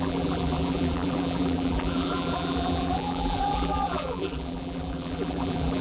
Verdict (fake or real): fake